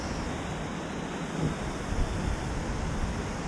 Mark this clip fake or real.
real